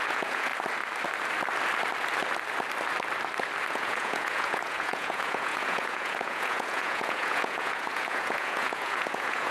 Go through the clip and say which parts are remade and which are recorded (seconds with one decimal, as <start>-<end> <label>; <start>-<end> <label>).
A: 0.0-0.5 remade; 0.5-3.7 recorded; 3.7-9.5 remade